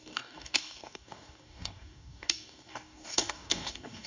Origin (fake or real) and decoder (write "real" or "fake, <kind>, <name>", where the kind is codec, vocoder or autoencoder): fake, codec, DAC